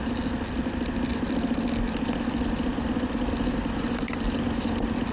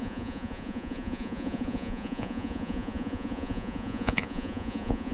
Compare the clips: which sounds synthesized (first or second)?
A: second